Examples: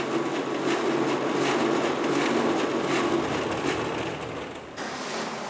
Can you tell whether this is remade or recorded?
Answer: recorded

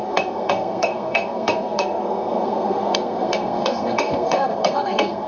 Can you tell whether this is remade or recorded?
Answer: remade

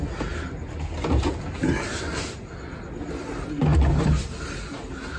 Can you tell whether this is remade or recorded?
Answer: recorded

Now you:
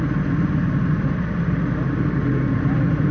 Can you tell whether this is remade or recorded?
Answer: recorded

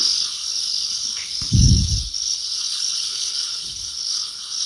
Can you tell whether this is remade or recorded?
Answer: remade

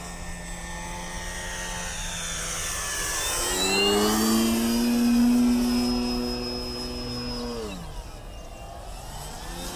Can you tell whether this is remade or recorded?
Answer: recorded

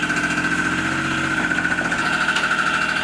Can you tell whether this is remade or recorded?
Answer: recorded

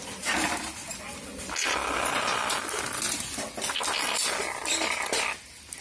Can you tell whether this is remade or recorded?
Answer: recorded